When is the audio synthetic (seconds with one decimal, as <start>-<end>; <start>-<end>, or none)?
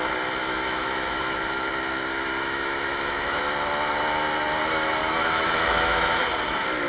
0.4-1.7; 2.1-3.4; 5.0-6.2